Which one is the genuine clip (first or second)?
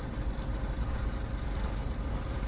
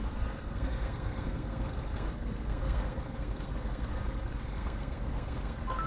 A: first